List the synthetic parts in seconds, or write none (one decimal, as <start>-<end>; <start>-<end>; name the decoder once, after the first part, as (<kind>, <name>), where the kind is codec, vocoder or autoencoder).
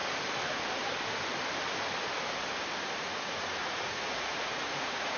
3.1-5.2 (vocoder, Vocos)